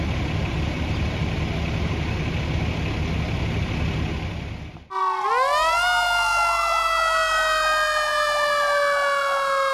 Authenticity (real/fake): real